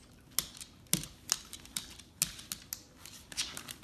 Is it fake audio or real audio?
real